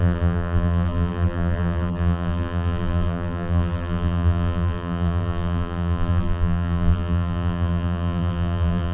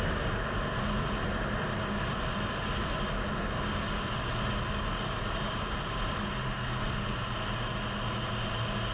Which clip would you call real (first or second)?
second